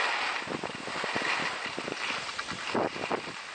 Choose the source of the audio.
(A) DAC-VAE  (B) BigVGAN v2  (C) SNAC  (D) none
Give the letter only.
D